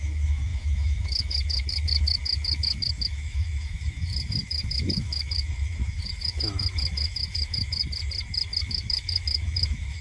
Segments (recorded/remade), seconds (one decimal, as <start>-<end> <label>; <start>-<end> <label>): 0.0-7.8 remade; 7.8-8.6 recorded; 8.6-10.0 remade